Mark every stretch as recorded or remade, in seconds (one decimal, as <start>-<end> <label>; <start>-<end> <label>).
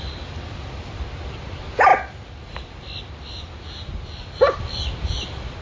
0.0-5.6 recorded